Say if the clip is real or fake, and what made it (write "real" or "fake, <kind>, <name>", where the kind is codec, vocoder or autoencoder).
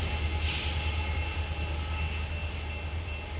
real